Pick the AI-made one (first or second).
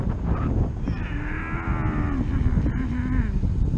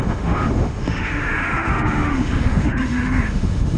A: second